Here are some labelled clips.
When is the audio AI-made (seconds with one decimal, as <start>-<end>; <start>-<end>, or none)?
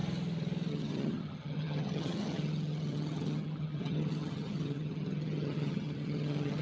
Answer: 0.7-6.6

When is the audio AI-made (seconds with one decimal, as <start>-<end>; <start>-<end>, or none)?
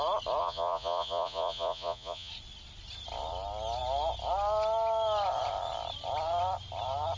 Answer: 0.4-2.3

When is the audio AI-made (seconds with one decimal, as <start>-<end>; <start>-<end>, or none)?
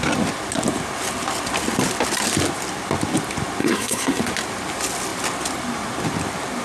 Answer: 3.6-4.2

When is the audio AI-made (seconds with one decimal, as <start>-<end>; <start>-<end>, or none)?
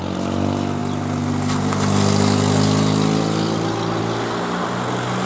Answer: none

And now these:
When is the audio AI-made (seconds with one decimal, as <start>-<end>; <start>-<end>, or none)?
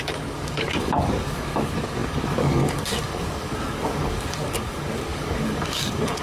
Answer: 0.0-6.2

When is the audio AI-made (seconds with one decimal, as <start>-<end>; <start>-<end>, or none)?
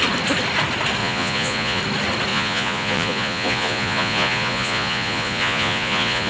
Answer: 1.0-1.8; 2.3-6.3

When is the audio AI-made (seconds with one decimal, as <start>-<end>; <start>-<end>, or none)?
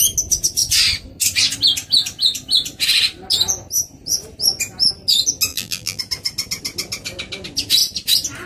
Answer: 5.5-6.0